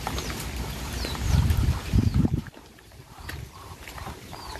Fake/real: fake